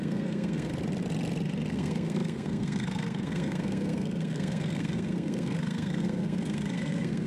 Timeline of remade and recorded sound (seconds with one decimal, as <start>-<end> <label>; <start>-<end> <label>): 0.0-0.7 remade; 0.7-1.7 recorded; 1.7-7.3 remade

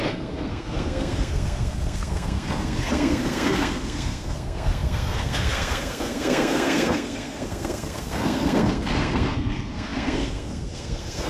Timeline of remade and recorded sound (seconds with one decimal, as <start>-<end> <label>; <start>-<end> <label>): 0.0-11.3 remade